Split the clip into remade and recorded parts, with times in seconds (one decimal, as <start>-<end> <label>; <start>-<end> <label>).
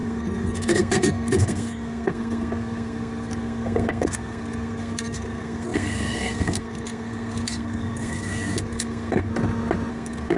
0.0-9.3 remade; 9.3-9.9 recorded; 9.9-10.4 remade